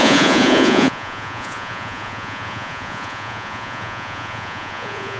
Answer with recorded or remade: remade